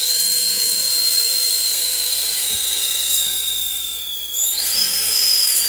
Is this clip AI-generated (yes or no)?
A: yes